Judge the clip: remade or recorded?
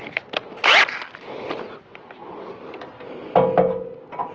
recorded